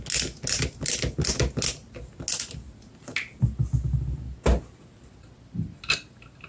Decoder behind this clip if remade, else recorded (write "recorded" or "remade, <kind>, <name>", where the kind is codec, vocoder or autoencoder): recorded